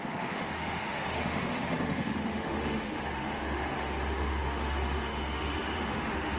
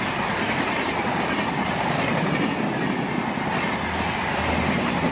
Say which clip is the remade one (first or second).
first